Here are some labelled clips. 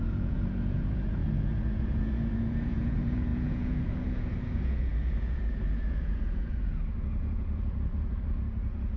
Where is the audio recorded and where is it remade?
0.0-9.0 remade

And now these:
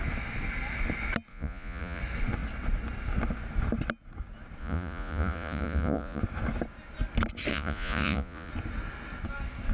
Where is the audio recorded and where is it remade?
0.0-1.3 recorded; 1.3-2.0 remade; 2.0-4.6 recorded; 4.6-6.2 remade; 6.2-7.5 recorded; 7.5-8.5 remade; 8.5-9.7 recorded

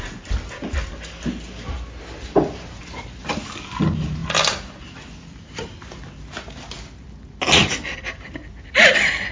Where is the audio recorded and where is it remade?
0.0-9.3 recorded